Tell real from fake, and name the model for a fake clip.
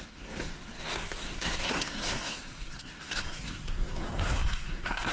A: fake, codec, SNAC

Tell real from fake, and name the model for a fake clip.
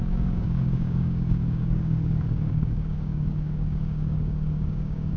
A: fake, codec, DAC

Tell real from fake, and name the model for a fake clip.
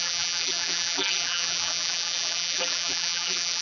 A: fake, vocoder, BigVGAN v2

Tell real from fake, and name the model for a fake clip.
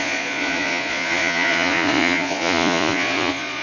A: fake, vocoder, Vocos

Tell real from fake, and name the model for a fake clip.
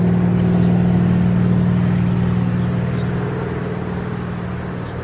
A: real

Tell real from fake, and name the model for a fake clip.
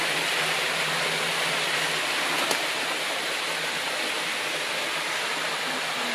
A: real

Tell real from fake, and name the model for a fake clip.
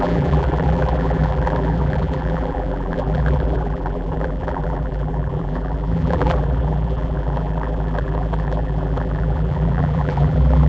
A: fake, vocoder, BigVGAN v2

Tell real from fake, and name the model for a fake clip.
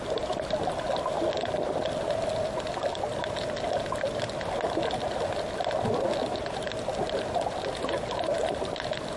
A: real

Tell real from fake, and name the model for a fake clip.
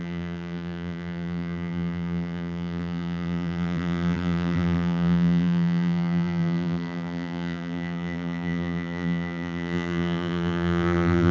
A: fake, vocoder, BigVGAN v2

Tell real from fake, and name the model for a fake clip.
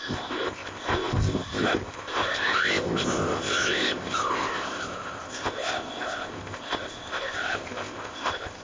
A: fake, codec, ZipCodec